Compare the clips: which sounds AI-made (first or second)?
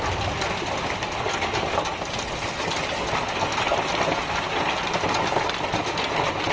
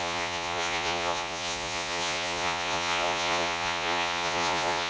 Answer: second